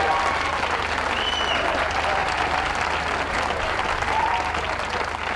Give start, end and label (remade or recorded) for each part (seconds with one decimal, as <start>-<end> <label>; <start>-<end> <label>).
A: 0.0-5.4 recorded